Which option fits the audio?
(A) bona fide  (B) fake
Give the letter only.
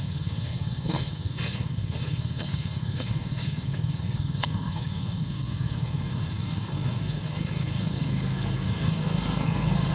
B